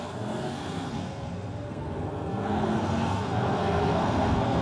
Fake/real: fake